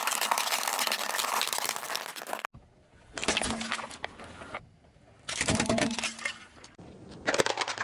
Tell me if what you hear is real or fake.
real